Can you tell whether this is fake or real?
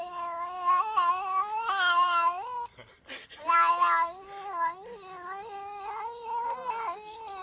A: real